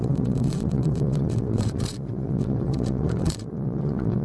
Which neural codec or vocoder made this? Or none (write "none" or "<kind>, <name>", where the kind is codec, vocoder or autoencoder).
vocoder, WaveNeXt